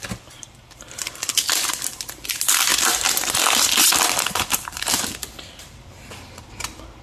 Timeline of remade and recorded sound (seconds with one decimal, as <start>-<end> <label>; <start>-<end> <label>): 0.0-7.0 remade